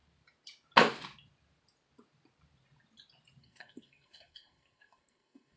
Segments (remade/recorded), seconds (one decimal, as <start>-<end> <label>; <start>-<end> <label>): 0.0-3.4 recorded; 3.4-5.6 remade